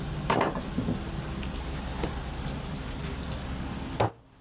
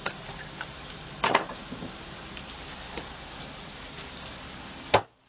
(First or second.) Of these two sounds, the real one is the first